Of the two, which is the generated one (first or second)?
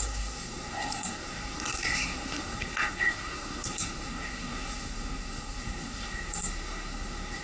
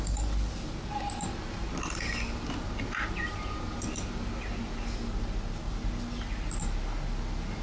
first